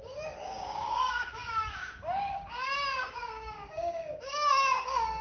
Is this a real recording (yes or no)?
no